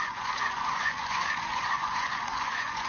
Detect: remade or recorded remade